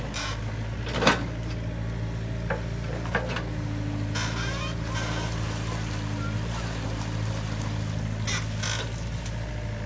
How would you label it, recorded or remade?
recorded